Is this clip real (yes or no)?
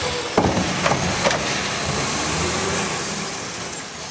no